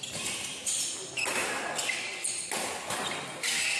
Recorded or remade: recorded